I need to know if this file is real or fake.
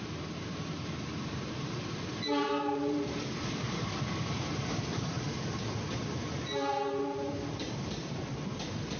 fake